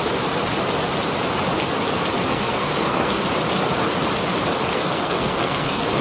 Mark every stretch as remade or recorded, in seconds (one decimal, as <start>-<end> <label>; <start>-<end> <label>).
0.0-2.3 recorded; 2.3-3.2 remade; 3.2-4.7 recorded; 4.7-6.0 remade